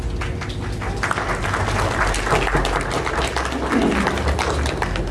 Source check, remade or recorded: recorded